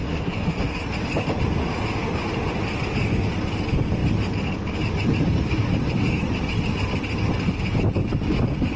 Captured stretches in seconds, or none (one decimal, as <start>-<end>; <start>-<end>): 0.8-8.8